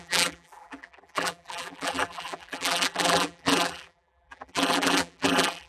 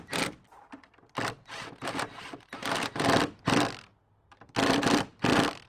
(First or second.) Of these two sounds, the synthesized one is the first